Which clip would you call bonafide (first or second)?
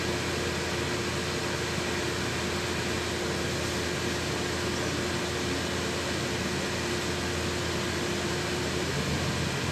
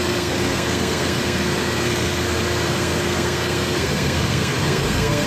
first